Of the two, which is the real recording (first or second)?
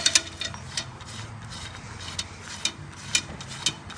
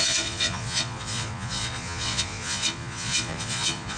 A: first